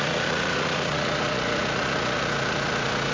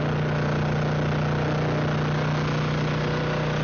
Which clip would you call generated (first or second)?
first